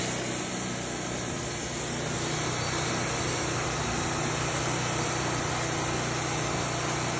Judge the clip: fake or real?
real